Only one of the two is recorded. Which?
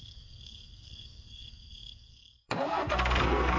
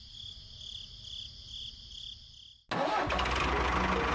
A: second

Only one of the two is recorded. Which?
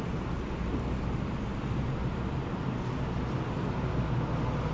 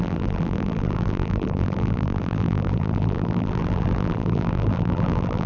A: first